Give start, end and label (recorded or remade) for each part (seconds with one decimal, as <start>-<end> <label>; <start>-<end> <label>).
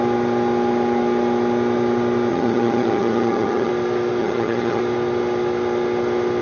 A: 0.0-2.3 recorded; 2.3-3.7 remade; 3.7-4.2 recorded; 4.2-4.8 remade; 4.8-6.4 recorded